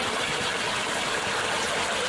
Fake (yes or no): no